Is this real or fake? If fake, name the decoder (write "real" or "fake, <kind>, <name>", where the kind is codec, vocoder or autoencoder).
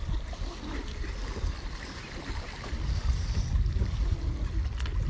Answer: real